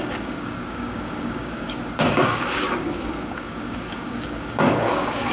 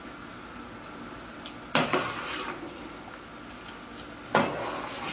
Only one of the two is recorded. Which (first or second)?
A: second